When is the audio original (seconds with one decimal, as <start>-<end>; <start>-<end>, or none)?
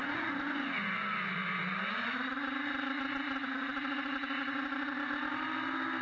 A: 1.6-6.0